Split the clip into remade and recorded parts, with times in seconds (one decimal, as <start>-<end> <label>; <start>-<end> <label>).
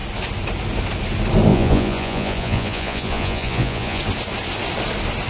0.0-1.5 recorded; 1.5-4.0 remade; 4.0-5.3 recorded